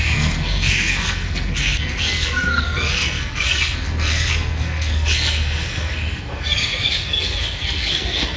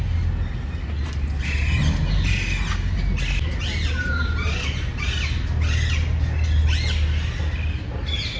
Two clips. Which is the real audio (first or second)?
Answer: second